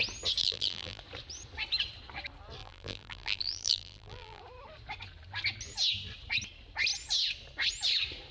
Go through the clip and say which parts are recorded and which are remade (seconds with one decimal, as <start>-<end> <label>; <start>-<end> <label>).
0.0-0.4 recorded; 0.4-1.0 remade; 1.0-2.6 recorded; 2.6-4.4 remade; 4.4-8.3 recorded